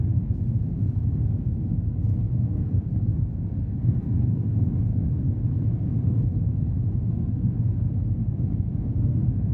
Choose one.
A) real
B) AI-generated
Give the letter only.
B